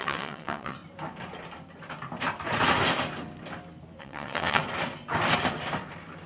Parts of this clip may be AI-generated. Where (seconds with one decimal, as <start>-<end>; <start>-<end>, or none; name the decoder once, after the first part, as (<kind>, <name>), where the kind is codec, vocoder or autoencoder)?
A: 0.0-0.8 (vocoder, WaveNeXt); 4.0-4.6

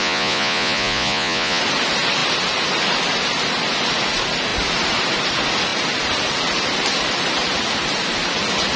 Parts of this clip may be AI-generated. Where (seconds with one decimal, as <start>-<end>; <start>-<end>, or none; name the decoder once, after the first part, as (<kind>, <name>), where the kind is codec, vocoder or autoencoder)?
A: 0.0-1.6 (vocoder, Vocos)

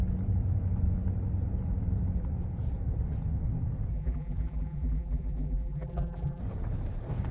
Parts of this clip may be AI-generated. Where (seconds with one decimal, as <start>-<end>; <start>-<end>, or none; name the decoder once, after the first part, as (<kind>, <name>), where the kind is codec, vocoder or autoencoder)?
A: 3.9-6.4 (vocoder, BigVGAN v2)